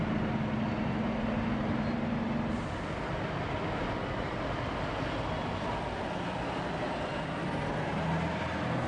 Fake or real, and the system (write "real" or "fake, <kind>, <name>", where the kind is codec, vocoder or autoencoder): real